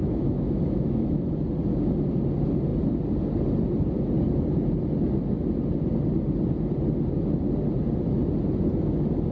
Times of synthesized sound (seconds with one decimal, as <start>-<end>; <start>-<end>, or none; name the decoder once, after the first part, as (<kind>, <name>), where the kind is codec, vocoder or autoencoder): 0.0-1.3 (autoencoder, DAC-VAE)